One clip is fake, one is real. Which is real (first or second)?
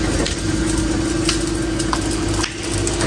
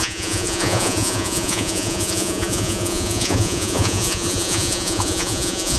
first